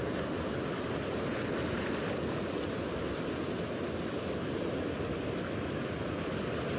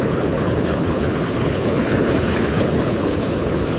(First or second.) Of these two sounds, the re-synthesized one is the second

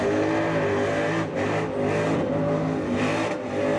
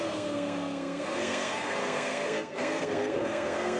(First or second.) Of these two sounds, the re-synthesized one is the second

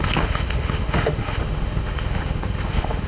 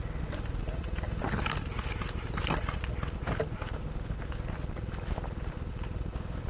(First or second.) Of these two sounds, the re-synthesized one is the first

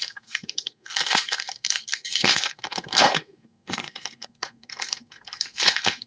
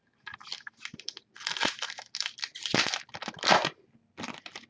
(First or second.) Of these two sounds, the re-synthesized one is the first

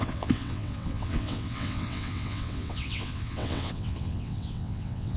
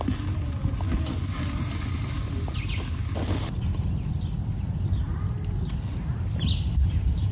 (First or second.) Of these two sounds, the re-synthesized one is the first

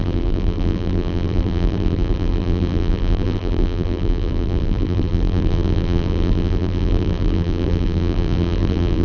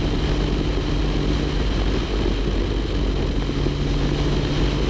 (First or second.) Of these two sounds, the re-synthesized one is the first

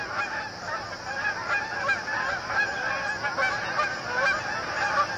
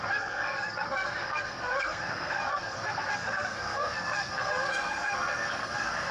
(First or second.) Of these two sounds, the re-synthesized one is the second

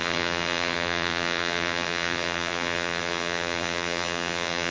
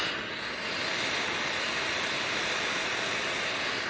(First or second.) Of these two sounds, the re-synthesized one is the first